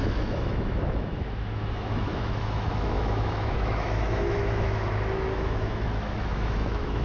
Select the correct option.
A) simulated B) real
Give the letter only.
A